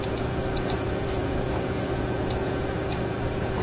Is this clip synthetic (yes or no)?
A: yes